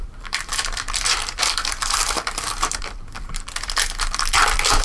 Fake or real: fake